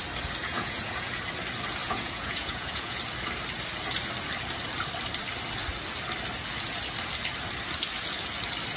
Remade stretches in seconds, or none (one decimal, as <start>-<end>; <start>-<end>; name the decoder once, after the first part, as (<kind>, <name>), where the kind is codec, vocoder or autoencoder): 0.4-1.2 (vocoder, Vocos); 1.8-3.0